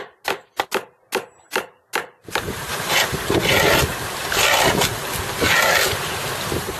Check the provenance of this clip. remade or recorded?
recorded